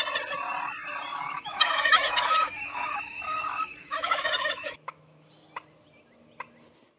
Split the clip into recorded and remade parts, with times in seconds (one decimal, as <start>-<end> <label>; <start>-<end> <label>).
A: 0.0-1.1 recorded; 1.1-5.3 remade; 5.3-7.0 recorded